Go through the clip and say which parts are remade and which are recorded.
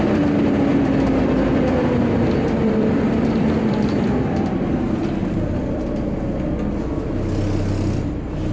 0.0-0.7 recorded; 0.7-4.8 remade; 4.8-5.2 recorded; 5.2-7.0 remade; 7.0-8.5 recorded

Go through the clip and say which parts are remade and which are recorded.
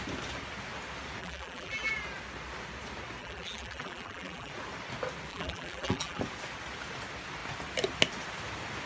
0.0-1.2 recorded; 1.2-1.9 remade; 1.9-3.2 recorded; 3.2-4.5 remade; 4.5-5.3 recorded; 5.3-6.2 remade; 6.2-8.9 recorded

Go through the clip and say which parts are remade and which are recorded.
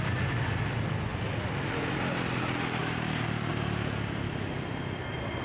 0.0-2.8 recorded; 2.8-3.5 remade; 3.5-5.4 recorded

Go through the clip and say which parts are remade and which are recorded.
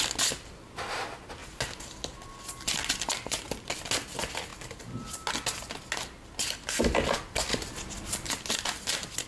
0.0-1.4 remade; 1.4-3.1 recorded; 3.1-4.5 remade; 4.5-6.2 recorded; 6.2-7.5 remade; 7.5-8.3 recorded; 8.3-9.3 remade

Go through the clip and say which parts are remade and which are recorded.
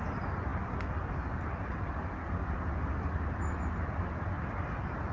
0.0-5.1 recorded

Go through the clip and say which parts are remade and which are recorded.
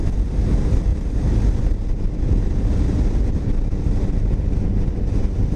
0.0-0.9 recorded; 0.9-1.4 remade; 1.4-5.6 recorded